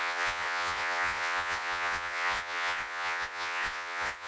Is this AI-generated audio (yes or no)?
yes